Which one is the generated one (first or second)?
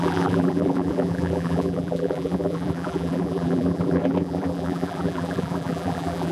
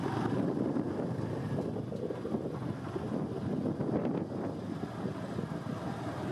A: first